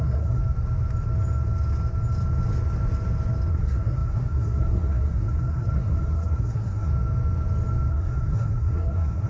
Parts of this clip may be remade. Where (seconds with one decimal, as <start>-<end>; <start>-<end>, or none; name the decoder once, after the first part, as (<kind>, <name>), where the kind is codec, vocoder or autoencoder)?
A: 0.0-0.4 (codec, SNAC); 3.5-6.9; 7.9-9.3